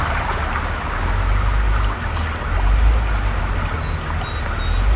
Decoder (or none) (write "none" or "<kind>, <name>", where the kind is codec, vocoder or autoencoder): none